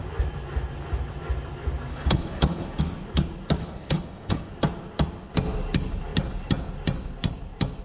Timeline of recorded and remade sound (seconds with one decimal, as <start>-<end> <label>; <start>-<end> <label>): 0.0-1.9 recorded; 1.9-2.8 remade; 2.8-3.6 recorded; 3.6-4.5 remade; 4.5-7.8 recorded